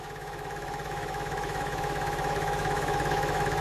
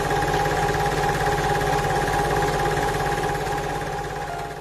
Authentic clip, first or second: second